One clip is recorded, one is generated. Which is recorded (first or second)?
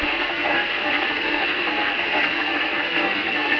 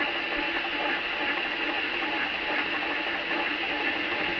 second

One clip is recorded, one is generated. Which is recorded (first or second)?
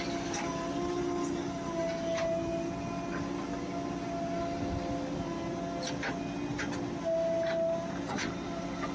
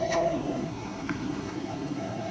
first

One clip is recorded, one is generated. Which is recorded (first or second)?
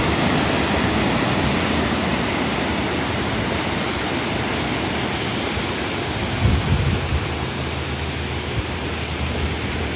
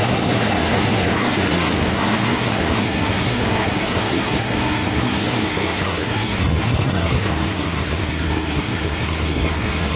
first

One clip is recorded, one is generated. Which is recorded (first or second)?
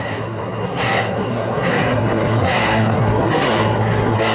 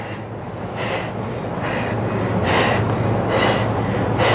second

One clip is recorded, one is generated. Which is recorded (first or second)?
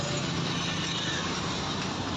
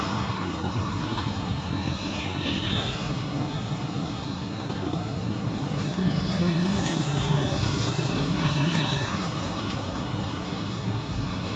first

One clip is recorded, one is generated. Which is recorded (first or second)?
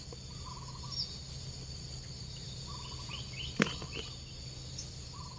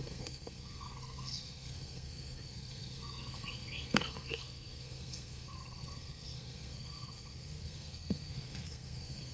first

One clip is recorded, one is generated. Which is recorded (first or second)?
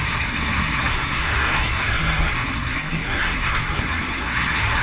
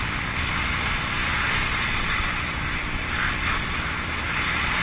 second